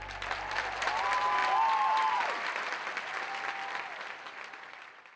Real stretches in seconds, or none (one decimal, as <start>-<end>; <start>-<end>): 1.4-2.1